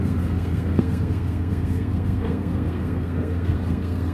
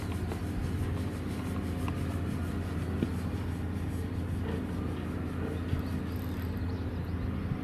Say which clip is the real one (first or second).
second